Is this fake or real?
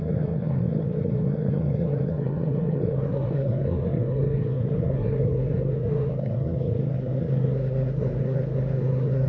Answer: fake